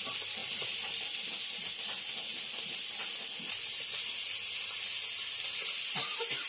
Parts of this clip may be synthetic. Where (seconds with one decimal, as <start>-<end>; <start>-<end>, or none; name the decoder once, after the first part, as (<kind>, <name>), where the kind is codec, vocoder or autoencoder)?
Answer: none